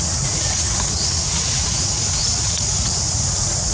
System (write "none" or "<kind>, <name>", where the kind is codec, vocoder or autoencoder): vocoder, Vocos